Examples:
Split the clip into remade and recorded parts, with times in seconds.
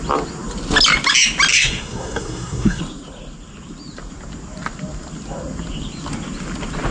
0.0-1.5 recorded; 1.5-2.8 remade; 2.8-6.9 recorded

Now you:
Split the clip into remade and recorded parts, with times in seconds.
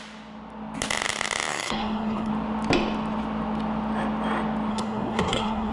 0.0-1.5 recorded; 1.5-2.3 remade; 2.3-4.7 recorded; 4.7-5.7 remade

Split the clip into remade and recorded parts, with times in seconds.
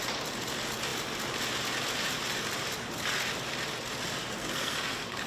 0.0-4.4 recorded; 4.4-5.3 remade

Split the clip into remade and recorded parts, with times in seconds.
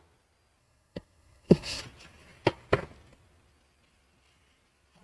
0.0-0.6 recorded; 0.6-1.8 remade; 1.8-5.0 recorded